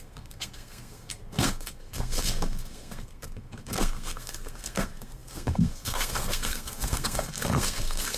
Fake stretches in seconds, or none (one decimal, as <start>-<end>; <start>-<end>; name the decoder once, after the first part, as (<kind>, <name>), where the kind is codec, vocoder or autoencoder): 0.0-8.2 (codec, SNAC)